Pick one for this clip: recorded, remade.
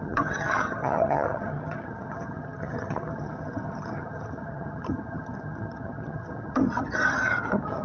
remade